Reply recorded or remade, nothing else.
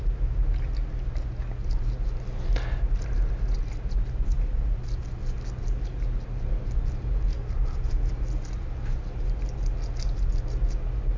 recorded